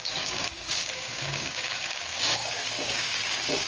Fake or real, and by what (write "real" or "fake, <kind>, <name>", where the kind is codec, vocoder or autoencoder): fake, codec, DAC